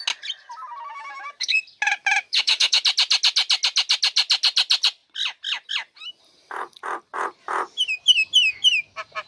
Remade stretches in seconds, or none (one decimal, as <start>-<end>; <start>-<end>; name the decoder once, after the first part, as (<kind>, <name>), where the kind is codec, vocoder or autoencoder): 0.9-1.6 (autoencoder, DAC-VAE); 2.0-2.8